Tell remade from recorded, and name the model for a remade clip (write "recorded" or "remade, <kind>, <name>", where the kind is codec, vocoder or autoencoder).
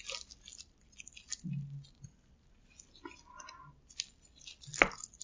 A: recorded